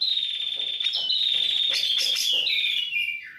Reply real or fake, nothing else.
real